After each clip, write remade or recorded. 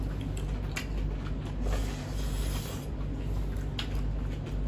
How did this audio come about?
recorded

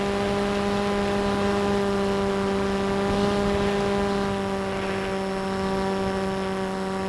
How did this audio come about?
recorded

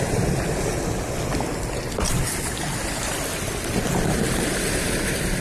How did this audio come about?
recorded